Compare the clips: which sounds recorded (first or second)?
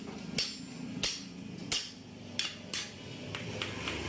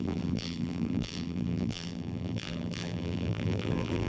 first